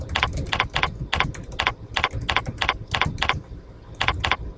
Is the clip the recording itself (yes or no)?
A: yes